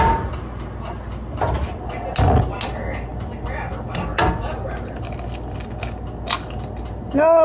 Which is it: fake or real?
real